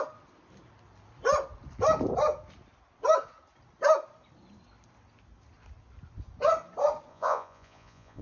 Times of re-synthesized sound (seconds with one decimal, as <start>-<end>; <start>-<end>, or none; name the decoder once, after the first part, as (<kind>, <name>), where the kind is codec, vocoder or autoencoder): 7.1-8.2 (vocoder, Vocos)